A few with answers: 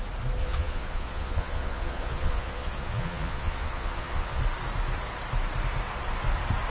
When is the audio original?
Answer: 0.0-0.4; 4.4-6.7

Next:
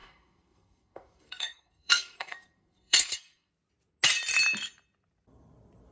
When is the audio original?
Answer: 3.5-5.9